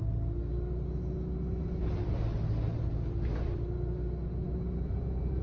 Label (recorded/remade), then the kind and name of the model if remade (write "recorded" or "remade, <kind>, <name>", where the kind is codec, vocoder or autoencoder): recorded